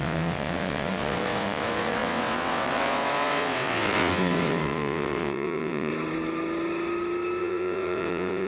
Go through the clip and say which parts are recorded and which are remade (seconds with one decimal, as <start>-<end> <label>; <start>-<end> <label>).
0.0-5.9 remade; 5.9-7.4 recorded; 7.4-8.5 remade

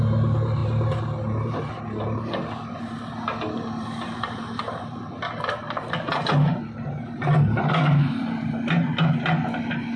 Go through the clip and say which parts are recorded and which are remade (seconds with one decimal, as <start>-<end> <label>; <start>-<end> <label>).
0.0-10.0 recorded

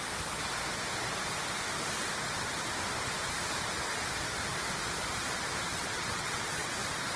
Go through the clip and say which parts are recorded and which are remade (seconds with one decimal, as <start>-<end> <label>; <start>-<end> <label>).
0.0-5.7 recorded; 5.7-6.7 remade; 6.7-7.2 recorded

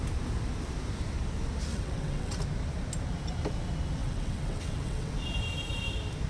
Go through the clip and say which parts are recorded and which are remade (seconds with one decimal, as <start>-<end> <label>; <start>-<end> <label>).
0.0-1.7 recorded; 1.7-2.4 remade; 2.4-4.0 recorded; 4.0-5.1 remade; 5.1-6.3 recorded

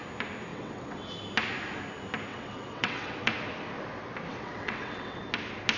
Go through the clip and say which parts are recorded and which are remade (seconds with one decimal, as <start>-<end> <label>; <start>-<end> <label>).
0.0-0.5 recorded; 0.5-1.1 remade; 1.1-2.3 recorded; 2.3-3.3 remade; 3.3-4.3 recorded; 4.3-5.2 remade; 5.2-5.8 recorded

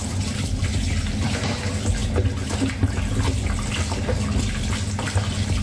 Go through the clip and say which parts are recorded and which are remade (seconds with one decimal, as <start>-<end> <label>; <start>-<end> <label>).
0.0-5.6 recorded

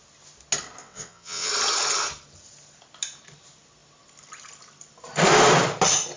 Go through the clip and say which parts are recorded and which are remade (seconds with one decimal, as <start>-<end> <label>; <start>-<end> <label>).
0.0-0.8 recorded; 0.8-1.5 remade; 1.5-6.2 recorded